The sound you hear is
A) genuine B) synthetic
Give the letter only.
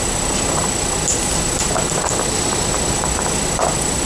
B